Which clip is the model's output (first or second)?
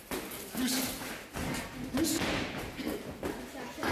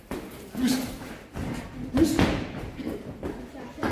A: second